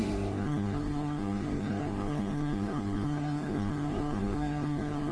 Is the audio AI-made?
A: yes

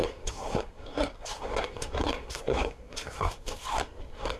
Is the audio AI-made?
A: yes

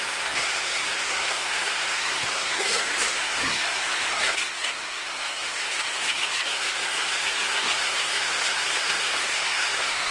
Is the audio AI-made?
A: yes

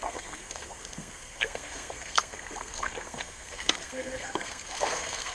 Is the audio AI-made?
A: yes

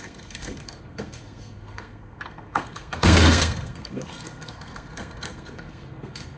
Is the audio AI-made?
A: yes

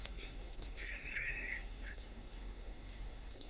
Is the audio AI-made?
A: yes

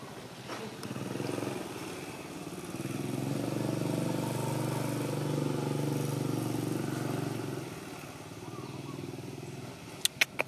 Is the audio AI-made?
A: no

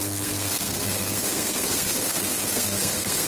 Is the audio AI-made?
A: yes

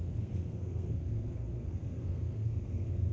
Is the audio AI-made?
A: yes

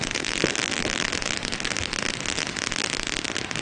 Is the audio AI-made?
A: no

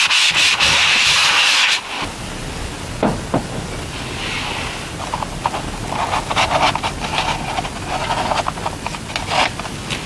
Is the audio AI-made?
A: no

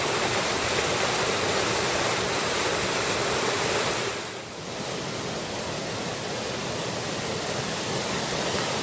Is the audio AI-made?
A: no